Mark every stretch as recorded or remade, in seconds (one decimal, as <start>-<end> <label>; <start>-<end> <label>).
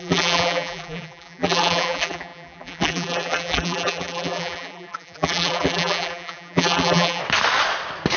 0.0-7.2 remade; 7.2-8.2 recorded